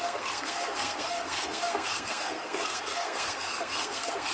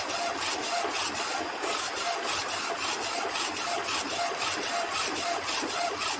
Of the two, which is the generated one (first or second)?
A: first